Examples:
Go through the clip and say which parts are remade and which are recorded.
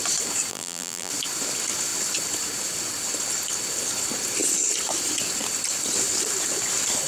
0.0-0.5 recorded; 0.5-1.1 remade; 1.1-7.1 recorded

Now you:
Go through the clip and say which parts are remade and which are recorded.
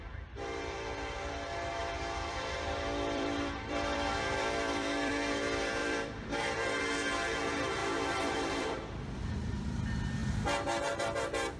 0.0-1.8 recorded; 1.8-5.1 remade; 5.1-5.8 recorded; 5.8-6.8 remade; 6.8-7.8 recorded; 7.8-9.3 remade; 9.3-11.6 recorded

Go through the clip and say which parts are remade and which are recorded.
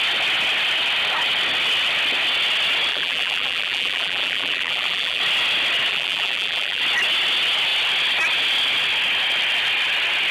0.0-2.9 recorded; 2.9-5.2 remade; 5.2-5.9 recorded; 5.9-6.8 remade; 6.8-10.3 recorded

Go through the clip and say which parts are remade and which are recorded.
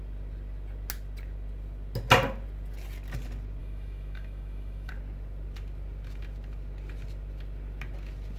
0.0-3.6 recorded; 3.6-4.9 remade; 4.9-8.4 recorded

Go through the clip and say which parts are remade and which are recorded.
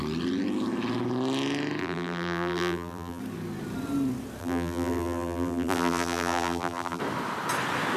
0.0-1.8 recorded; 1.8-3.2 remade; 3.2-4.4 recorded; 4.4-7.0 remade; 7.0-8.0 recorded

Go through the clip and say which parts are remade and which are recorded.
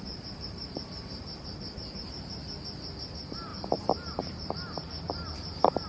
0.0-2.4 remade; 2.4-3.1 recorded; 3.1-5.9 remade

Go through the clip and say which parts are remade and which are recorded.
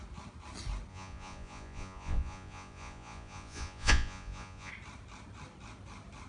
0.0-0.9 recorded; 0.9-4.7 remade; 4.7-6.3 recorded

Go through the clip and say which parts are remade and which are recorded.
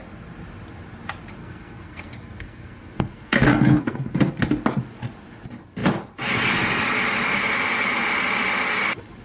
0.0-1.4 recorded; 1.4-4.3 remade; 4.3-9.2 recorded